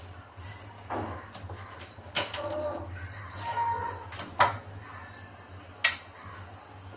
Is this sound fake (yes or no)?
no